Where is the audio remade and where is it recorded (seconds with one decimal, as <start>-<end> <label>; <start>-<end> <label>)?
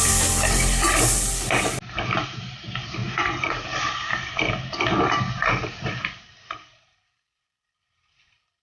0.0-8.6 recorded